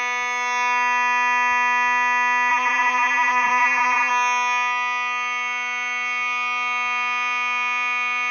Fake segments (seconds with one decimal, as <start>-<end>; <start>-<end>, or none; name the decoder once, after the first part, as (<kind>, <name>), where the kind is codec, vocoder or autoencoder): 2.5-4.1 (vocoder, Vocos)